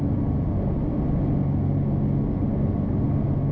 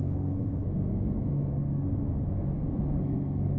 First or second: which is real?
first